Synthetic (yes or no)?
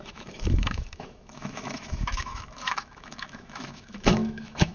yes